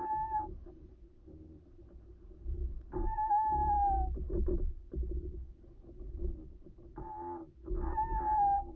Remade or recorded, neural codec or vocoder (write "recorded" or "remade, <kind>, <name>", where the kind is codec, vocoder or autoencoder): remade, vocoder, BigVGAN v2